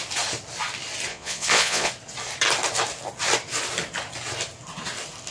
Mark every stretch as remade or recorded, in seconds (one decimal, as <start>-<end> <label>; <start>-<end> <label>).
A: 0.0-1.1 recorded; 1.1-1.9 remade; 1.9-5.3 recorded

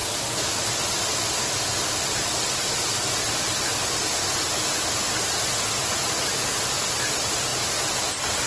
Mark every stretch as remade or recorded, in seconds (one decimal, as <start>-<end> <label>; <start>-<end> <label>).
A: 0.0-8.5 recorded

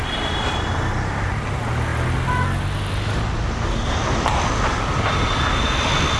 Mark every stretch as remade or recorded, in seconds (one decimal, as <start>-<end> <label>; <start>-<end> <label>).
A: 0.0-6.2 recorded

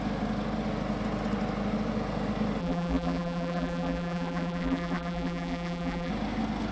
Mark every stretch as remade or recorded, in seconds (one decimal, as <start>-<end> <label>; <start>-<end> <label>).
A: 0.0-2.6 recorded; 2.6-6.1 remade; 6.1-6.7 recorded

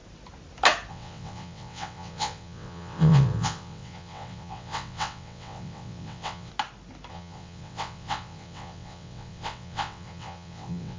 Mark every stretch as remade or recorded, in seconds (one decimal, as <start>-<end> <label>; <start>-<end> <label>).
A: 0.0-0.9 recorded; 0.9-6.5 remade; 6.5-7.1 recorded; 7.1-11.0 remade

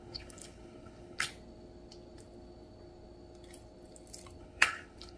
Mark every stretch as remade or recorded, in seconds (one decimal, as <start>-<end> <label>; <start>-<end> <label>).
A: 0.0-1.3 remade; 1.3-4.4 recorded; 4.4-5.2 remade

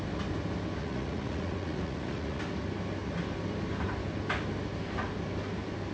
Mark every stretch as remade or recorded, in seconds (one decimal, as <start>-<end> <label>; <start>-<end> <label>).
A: 0.0-0.8 recorded; 0.8-2.4 remade; 2.4-5.9 recorded